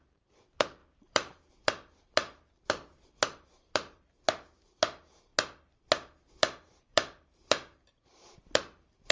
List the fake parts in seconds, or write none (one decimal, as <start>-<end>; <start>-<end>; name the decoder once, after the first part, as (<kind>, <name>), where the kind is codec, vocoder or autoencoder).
0.0-5.3 (vocoder, BigVGAN v2); 6.3-9.1